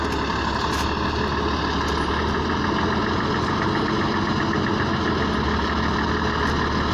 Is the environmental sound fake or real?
real